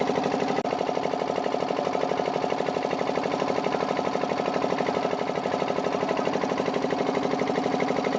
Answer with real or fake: real